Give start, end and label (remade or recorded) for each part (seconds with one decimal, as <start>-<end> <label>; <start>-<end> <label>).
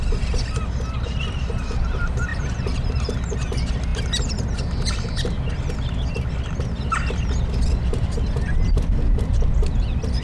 0.0-10.2 recorded